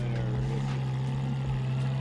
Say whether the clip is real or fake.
real